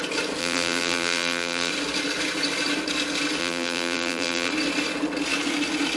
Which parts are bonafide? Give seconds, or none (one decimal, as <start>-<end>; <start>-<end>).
0.0-0.4; 1.7-3.4; 4.5-6.0